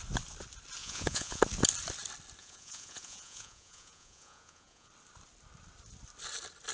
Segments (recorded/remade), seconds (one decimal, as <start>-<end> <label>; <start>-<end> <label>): 0.0-0.8 recorded; 0.8-1.4 remade; 1.4-2.4 recorded; 2.4-4.9 remade; 4.9-6.7 recorded